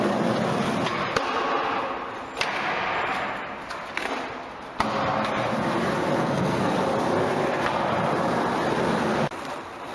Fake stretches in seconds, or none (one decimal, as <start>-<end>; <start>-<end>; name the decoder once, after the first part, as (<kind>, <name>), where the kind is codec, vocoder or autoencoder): 6.2-6.7 (codec, SNAC)